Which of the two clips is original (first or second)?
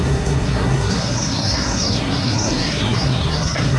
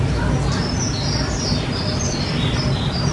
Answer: second